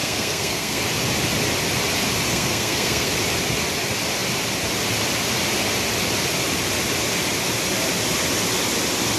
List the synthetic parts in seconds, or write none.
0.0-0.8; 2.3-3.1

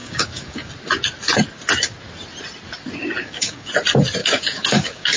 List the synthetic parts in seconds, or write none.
0.0-0.7; 3.2-3.7; 4.2-5.2

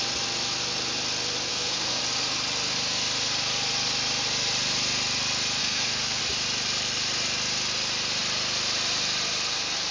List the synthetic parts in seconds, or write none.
1.5-2.0; 5.6-6.2